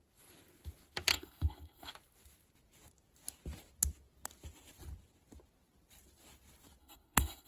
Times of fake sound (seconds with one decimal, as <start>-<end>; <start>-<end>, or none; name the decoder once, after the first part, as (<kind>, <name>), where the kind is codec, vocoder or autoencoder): 1.1-1.9 (codec, SNAC); 6.8-7.5